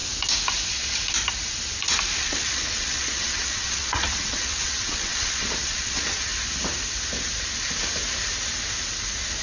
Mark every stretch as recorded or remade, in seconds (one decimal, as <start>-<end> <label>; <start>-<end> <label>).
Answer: 0.0-2.2 recorded; 2.2-6.3 remade; 6.3-9.4 recorded